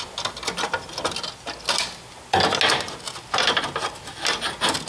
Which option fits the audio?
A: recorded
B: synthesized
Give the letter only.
A